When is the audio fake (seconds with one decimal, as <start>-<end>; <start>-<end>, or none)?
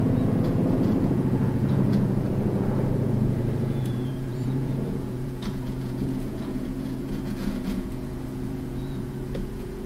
0.0-9.9